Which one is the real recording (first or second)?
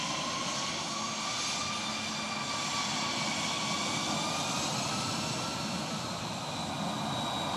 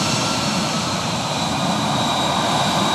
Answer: first